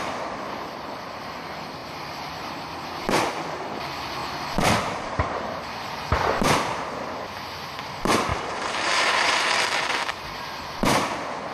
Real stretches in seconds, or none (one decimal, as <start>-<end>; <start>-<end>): 0.0-1.8; 2.5-4.2; 5.8-8.3; 10.0-11.5